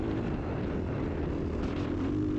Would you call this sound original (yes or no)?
yes